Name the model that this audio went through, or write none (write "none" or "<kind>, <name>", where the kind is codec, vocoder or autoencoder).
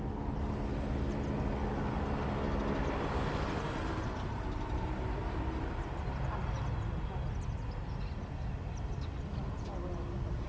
none